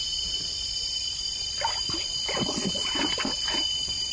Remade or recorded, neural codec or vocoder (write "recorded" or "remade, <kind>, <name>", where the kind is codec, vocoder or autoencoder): remade, vocoder, BigVGAN v2